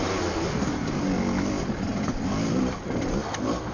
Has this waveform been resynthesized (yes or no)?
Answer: no